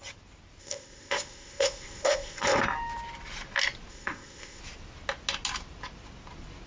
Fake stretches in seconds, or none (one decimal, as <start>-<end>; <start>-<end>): 0.6-2.6; 3.9-4.6